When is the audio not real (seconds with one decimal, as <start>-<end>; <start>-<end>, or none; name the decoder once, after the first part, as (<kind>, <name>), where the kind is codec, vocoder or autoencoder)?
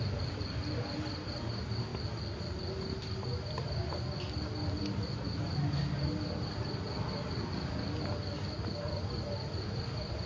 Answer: none